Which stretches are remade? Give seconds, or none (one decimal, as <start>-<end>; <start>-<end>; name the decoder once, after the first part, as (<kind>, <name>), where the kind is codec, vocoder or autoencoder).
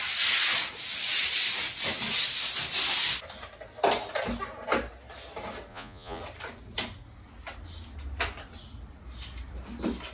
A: 5.7-6.2 (vocoder, Vocos)